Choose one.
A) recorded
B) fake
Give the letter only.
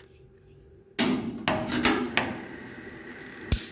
A